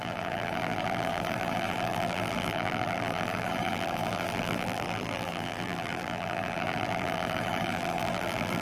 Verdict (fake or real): fake